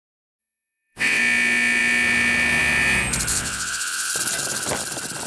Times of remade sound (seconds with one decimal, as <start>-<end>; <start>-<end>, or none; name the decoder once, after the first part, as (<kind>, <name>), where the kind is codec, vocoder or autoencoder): 0.4-1.2 (vocoder, WaveNeXt); 3.3-4.1